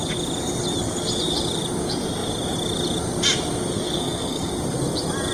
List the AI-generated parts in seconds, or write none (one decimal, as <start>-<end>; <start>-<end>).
3.7-4.5